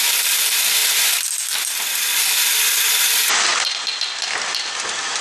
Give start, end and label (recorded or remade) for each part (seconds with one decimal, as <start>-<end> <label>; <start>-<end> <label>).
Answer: 0.0-5.2 recorded